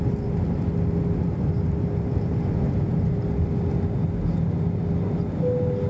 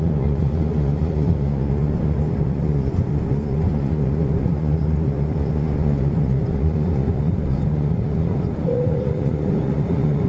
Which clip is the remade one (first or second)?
second